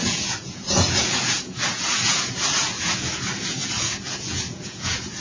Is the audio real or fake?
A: fake